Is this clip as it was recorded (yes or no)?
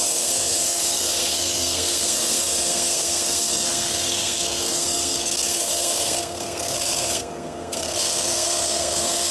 no